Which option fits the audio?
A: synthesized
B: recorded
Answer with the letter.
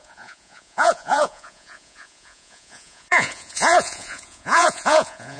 A